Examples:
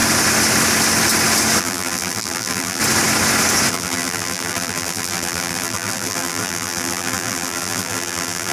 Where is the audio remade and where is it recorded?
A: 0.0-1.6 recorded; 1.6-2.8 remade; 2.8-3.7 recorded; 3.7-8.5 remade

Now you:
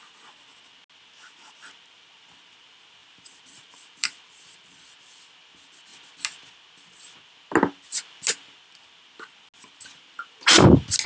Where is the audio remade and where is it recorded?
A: 0.0-3.0 recorded; 3.0-4.8 remade; 4.8-11.1 recorded

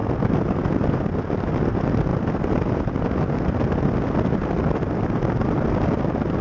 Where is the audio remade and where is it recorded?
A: 0.0-6.4 recorded